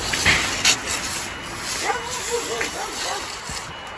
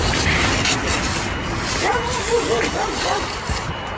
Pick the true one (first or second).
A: first